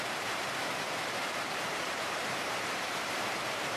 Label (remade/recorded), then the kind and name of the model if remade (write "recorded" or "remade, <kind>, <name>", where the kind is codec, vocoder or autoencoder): remade, vocoder, BigVGAN v2